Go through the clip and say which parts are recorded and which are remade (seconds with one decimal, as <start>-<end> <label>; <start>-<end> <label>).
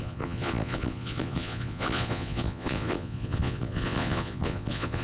0.0-5.0 remade